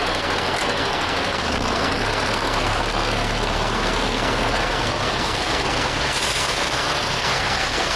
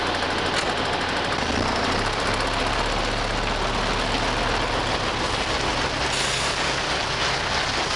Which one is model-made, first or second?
first